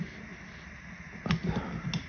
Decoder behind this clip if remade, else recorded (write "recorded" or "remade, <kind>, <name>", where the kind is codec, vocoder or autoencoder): recorded